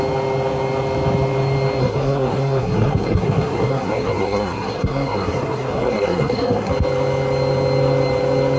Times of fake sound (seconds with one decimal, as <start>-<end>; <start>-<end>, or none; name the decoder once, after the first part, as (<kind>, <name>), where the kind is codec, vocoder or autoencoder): 1.8-6.7 (codec, SNAC)